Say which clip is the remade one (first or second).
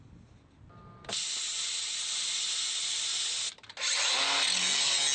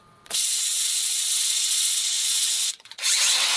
second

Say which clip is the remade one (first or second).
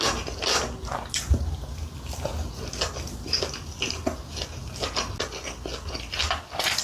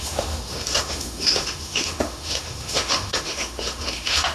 second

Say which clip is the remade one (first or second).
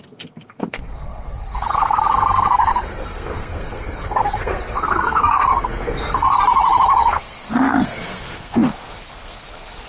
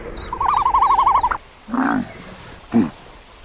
first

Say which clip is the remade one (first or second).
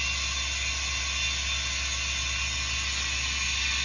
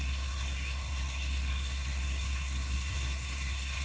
second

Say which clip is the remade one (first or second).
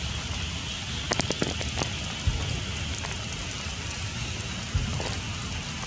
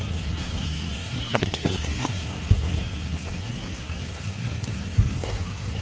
second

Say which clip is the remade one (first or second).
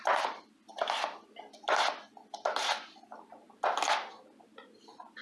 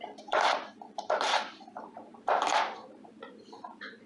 second